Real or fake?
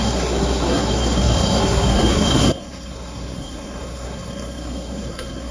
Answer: fake